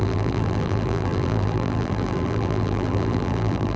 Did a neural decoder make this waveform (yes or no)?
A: yes